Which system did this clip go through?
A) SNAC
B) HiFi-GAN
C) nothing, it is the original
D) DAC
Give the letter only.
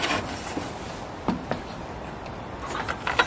C